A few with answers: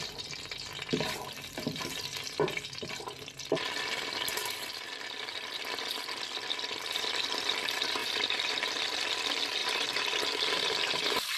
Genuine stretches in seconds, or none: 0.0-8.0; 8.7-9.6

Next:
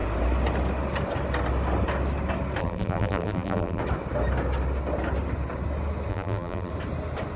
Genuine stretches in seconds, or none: 0.0-2.6; 3.8-6.1; 6.7-7.4

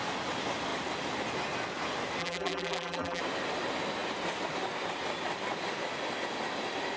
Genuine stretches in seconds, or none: 0.0-2.2; 3.2-7.0

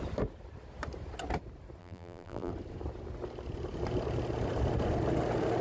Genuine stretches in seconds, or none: 0.0-1.8; 2.5-5.6

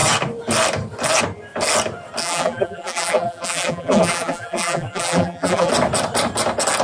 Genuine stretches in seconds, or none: 0.0-2.2; 5.7-6.8

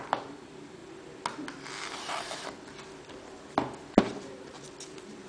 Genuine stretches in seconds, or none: 0.8-4.0